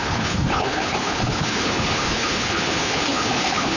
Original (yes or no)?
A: no